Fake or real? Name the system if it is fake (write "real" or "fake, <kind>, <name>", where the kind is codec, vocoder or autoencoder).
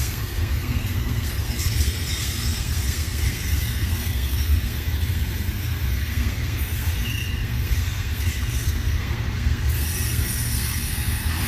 fake, codec, SNAC